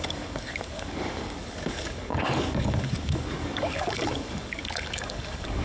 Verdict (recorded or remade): remade